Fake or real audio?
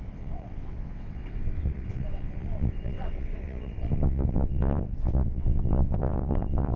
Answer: fake